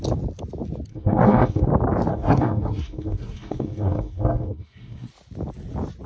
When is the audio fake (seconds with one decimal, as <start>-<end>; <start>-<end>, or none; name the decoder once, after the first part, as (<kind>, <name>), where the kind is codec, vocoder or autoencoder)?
0.9-1.7 (codec, SNAC); 2.1-5.1